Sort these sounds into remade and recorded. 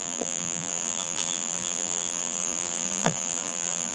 remade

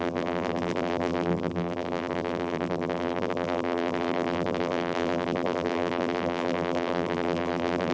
remade